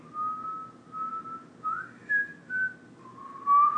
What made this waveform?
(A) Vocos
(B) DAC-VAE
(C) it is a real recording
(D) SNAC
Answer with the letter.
C